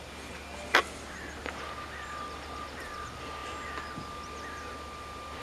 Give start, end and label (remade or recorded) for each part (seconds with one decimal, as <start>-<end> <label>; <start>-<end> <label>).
0.0-5.4 recorded